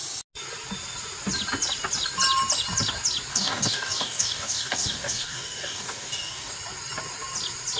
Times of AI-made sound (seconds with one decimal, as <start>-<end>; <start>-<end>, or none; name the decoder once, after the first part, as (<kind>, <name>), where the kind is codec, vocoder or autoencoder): 3.3-6.5 (codec, DAC)